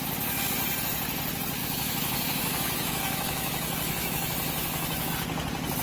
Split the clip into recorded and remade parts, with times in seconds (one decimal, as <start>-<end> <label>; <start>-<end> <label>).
0.0-1.6 recorded; 1.6-5.1 remade; 5.1-5.8 recorded